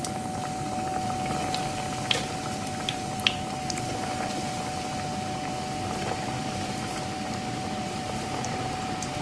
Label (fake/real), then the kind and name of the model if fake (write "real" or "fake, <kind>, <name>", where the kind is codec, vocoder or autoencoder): fake, vocoder, BigVGAN v2